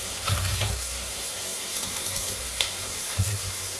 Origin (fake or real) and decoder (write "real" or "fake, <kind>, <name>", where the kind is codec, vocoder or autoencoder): fake, codec, SNAC